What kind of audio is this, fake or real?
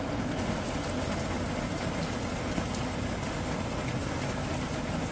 real